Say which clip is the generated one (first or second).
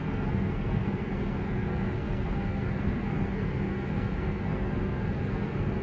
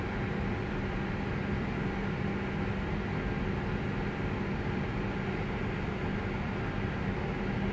first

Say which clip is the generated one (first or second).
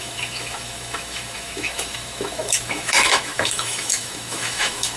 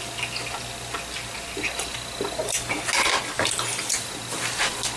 first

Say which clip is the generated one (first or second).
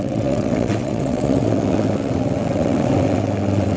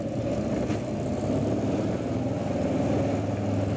first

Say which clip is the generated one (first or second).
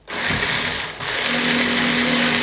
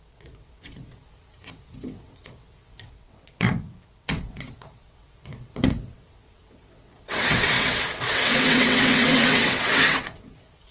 second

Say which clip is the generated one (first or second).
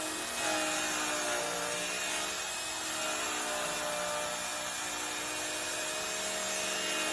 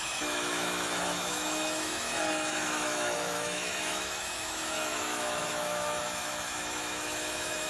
second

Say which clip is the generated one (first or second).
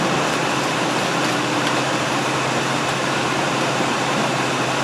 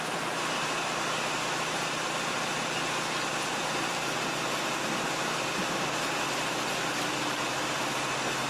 first